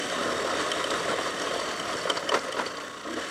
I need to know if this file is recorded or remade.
recorded